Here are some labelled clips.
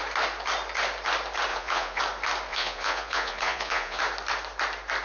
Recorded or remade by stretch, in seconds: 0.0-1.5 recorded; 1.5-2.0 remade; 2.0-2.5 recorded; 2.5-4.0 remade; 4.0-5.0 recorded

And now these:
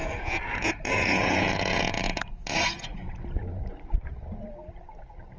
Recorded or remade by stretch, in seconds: 0.0-3.2 remade; 3.2-5.4 recorded

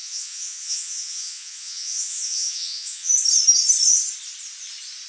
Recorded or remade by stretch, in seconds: 0.0-3.1 remade; 3.1-5.1 recorded

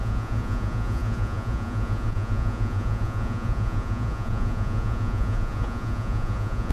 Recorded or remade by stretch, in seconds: 0.0-6.7 remade

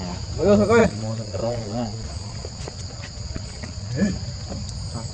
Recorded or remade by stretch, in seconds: 0.0-0.8 recorded; 0.8-3.9 remade; 3.9-5.1 recorded

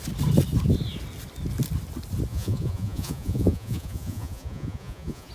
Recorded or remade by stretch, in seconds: 0.0-2.3 recorded; 2.3-5.3 remade